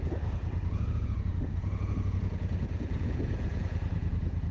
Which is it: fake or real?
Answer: fake